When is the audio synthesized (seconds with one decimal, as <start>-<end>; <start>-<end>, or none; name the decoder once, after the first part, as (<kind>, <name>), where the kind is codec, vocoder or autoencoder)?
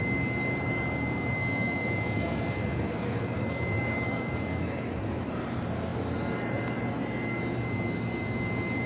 1.4-5.3 (autoencoder, DAC-VAE)